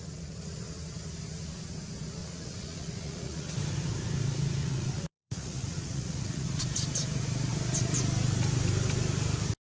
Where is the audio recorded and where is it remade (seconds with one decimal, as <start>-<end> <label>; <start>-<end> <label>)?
0.0-2.2 recorded; 2.2-3.5 remade; 3.5-4.6 recorded; 4.6-6.6 remade; 6.6-9.7 recorded